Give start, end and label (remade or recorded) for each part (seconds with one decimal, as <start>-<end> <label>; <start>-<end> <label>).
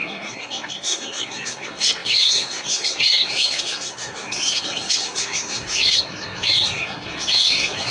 0.0-7.9 remade